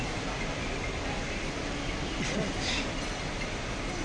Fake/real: real